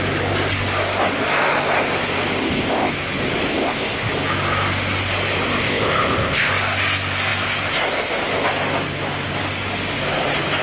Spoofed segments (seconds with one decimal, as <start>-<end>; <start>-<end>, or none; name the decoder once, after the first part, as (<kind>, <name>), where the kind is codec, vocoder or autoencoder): 2.4-2.9 (codec, ZipCodec); 3.5-4.1; 5.6-6.5